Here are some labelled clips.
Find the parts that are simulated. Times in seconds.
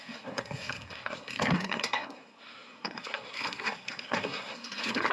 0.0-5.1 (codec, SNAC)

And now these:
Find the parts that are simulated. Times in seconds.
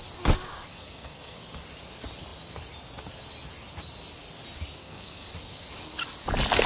0.7-1.4 (codec, SNAC); 4.8-5.3